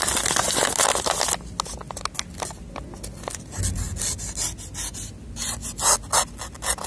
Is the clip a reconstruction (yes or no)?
no